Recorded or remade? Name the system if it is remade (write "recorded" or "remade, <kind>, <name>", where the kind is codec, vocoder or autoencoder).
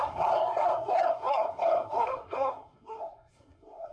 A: remade, codec, SNAC